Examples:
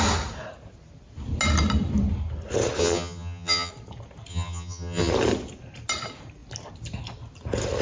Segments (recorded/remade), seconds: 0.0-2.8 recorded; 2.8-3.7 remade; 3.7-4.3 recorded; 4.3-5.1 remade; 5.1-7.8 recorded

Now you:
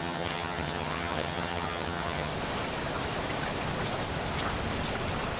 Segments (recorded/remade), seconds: 0.0-2.3 remade; 2.3-5.4 recorded

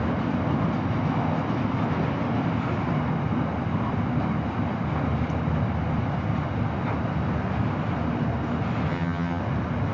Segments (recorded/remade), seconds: 0.0-8.9 recorded; 8.9-9.4 remade; 9.4-9.9 recorded